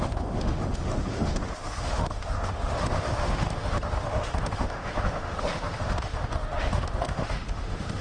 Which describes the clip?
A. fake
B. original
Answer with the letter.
A